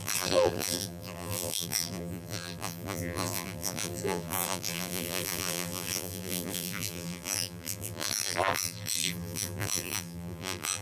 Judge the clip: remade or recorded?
remade